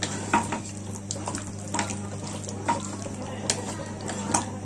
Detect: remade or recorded recorded